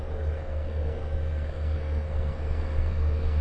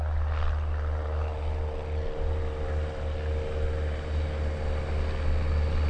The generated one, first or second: first